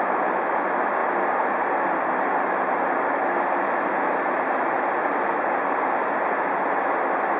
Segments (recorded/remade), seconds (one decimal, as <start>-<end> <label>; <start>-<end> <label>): 0.0-7.4 recorded